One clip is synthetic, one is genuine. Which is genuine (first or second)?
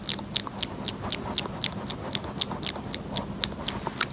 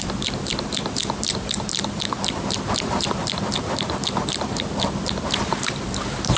first